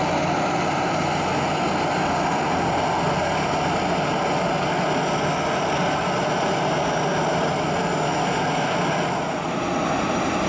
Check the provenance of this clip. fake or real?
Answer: real